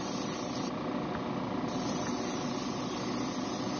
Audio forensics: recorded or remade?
recorded